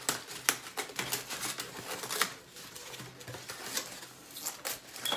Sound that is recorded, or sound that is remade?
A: recorded